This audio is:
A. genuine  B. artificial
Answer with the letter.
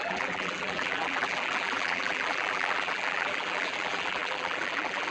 B